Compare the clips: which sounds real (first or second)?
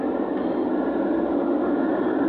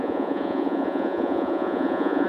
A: first